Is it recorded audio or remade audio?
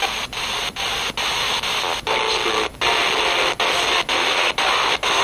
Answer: recorded